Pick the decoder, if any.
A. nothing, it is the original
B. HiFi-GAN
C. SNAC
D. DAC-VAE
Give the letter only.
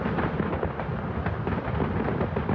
A